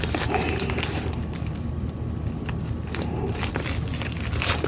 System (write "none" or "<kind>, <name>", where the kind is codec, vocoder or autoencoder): none